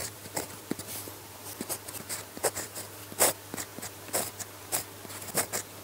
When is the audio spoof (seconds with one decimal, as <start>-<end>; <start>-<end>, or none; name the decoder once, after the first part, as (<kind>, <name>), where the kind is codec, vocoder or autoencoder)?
0.0-0.7 (vocoder, BigVGAN v2); 2.4-3.0

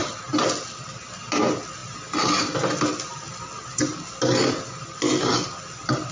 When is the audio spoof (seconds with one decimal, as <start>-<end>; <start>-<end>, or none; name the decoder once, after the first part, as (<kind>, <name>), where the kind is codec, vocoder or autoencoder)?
none

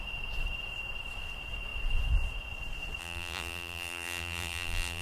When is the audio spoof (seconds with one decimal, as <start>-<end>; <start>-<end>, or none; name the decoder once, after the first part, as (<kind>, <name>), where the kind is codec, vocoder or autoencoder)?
3.0-5.0 (vocoder, BigVGAN v2)

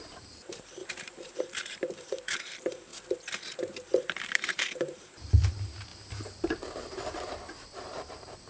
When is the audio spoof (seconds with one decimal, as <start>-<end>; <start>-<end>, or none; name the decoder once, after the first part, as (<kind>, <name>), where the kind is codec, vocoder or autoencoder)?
0.0-2.9 (vocoder, BigVGAN v2); 4.2-5.9; 6.5-8.5

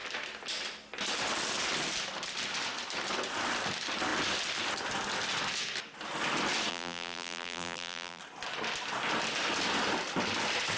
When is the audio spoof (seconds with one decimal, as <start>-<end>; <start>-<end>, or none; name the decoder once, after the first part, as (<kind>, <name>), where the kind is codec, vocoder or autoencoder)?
6.7-8.2 (vocoder, BigVGAN v2)

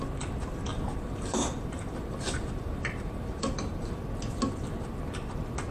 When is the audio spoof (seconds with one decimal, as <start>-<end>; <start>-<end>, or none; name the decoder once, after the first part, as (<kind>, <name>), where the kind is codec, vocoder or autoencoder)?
0.7-4.0 (vocoder, BigVGAN v2)